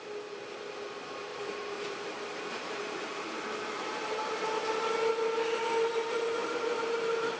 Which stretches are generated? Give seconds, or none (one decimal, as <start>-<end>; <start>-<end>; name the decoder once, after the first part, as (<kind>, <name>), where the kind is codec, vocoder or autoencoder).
1.3-4.9 (vocoder, BigVGAN v2); 6.4-7.4